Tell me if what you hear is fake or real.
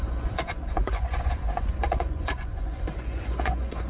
fake